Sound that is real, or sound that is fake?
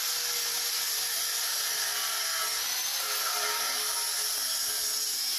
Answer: real